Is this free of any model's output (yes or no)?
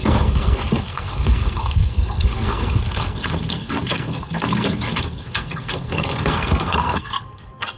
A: no